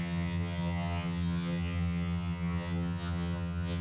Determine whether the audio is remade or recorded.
remade